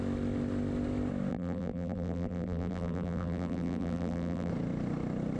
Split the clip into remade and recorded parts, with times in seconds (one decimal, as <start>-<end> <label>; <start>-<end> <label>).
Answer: 0.0-1.3 recorded; 1.3-4.5 remade; 4.5-5.4 recorded